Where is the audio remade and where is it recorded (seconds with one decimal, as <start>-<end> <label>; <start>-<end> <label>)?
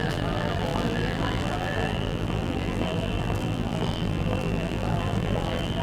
0.0-5.8 remade